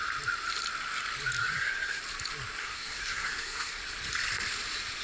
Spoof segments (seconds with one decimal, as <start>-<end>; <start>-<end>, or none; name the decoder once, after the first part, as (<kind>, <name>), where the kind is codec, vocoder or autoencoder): 1.4-2.0 (codec, SNAC); 2.6-3.8